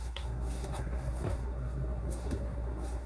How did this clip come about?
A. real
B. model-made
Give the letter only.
B